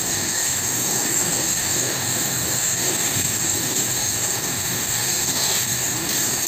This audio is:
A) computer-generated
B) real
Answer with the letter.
A